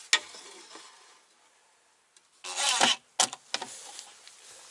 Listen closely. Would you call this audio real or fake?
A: real